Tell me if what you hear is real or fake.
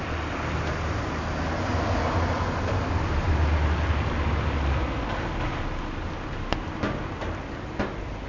real